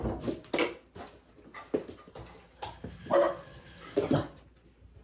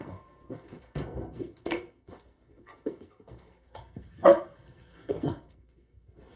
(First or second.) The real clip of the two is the first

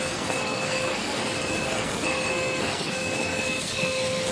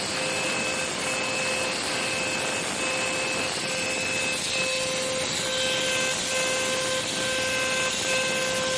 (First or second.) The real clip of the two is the second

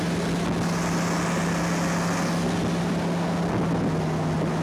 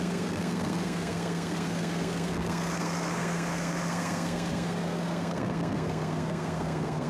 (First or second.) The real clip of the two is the first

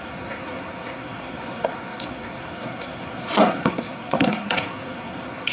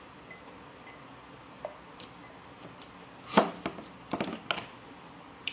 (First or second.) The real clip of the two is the second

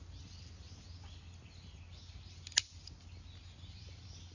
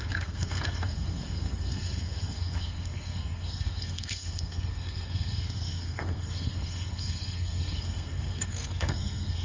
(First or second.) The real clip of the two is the first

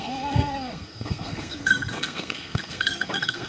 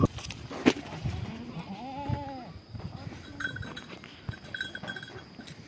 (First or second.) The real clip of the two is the second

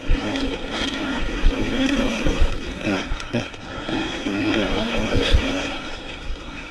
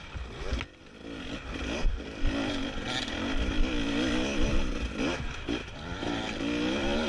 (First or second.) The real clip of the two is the second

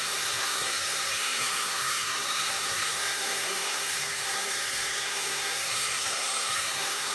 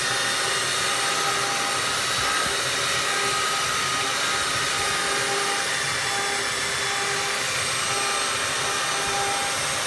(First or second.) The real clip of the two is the second